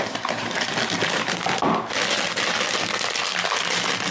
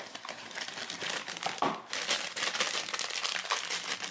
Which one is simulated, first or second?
second